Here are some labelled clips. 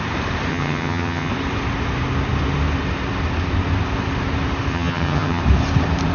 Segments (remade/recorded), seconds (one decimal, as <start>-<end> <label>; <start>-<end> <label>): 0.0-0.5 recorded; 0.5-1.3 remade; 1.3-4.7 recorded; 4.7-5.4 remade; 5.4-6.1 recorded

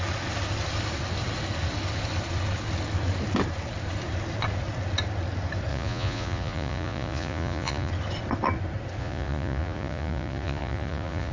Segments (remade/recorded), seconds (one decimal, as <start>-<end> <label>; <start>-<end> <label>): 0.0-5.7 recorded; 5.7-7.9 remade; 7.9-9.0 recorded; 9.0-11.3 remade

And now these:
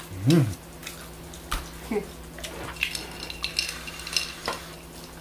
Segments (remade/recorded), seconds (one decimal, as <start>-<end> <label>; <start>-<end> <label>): 0.0-5.2 recorded